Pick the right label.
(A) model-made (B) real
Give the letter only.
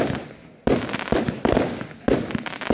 B